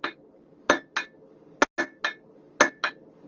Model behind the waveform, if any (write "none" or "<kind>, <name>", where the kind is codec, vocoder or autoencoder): none